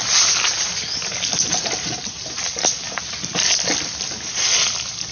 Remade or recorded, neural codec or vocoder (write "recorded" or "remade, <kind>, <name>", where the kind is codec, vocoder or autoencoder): recorded